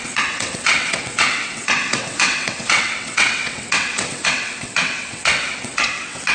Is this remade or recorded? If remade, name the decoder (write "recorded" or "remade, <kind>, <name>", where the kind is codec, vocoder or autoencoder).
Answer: remade, vocoder, WaveNeXt